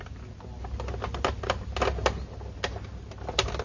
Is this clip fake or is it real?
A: real